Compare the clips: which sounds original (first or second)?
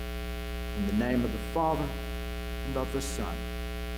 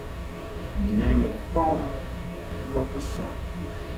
first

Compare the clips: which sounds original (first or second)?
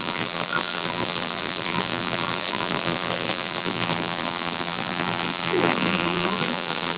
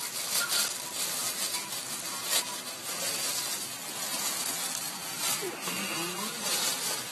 second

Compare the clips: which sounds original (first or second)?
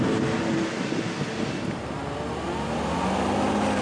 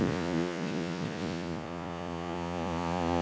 first